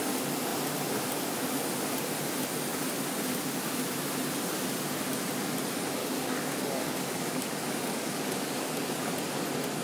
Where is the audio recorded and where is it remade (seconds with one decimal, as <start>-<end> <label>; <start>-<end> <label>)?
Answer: 0.0-6.0 recorded; 6.0-9.1 remade; 9.1-9.8 recorded